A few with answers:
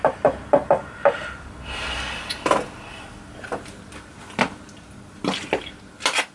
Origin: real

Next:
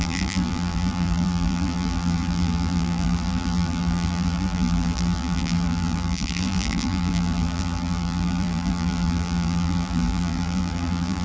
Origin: fake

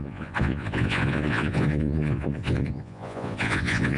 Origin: fake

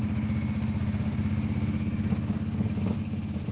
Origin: real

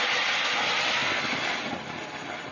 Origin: real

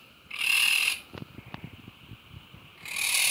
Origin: fake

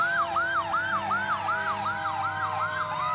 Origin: real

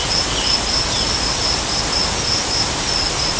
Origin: real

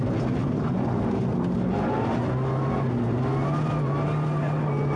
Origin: real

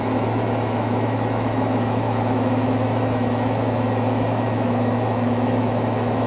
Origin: fake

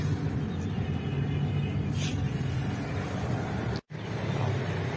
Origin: real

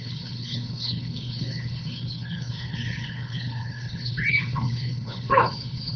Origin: fake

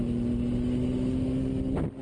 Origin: real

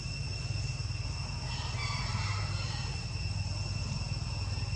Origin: real